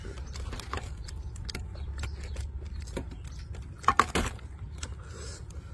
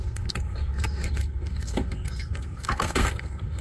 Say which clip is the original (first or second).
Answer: first